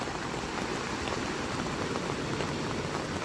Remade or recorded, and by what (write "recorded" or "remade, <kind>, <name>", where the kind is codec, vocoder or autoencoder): recorded